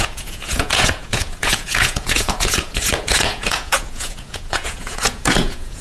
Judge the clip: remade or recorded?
remade